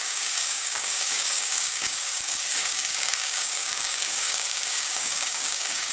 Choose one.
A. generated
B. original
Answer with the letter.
A